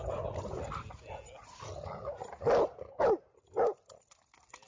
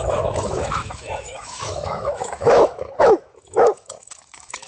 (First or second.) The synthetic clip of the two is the second